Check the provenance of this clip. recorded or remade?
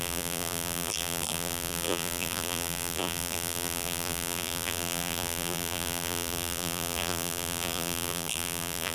remade